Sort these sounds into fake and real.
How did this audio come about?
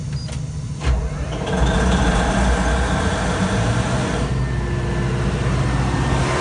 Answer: real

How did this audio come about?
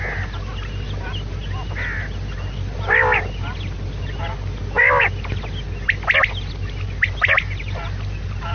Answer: real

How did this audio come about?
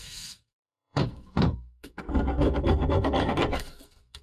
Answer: fake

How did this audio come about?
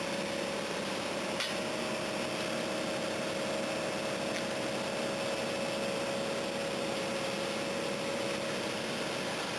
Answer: real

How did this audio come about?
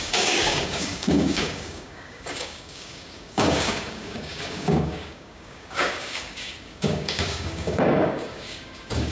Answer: fake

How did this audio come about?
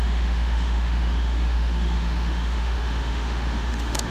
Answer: fake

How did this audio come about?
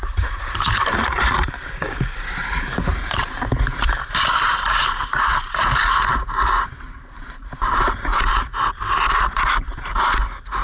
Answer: fake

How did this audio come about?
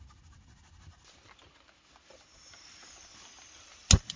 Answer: real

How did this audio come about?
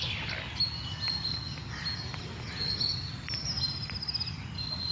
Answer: real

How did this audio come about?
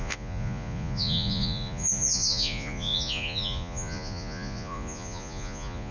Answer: fake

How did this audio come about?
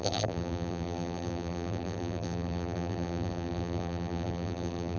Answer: fake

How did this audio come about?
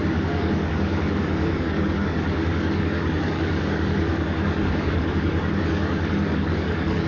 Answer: fake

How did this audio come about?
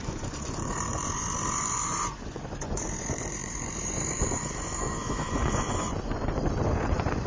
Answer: fake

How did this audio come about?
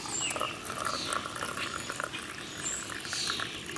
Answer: real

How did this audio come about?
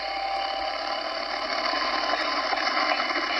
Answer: real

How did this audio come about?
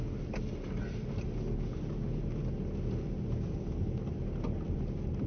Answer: real